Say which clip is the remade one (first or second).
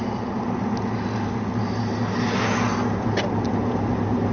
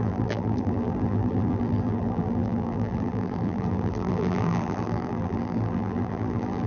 second